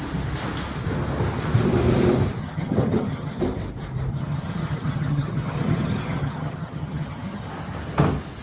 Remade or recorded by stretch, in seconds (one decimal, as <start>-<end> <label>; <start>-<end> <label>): 0.0-2.4 recorded; 2.4-3.4 remade; 3.4-4.1 recorded; 4.1-7.5 remade; 7.5-8.4 recorded